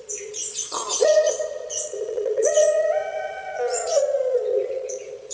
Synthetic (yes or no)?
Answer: yes